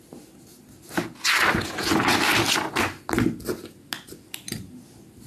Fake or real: real